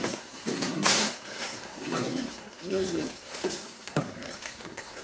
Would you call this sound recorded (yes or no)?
no